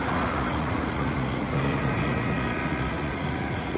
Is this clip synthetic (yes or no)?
yes